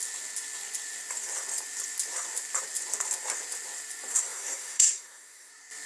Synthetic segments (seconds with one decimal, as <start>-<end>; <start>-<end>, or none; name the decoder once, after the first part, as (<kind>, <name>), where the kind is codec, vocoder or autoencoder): 4.1-5.5 (codec, SNAC)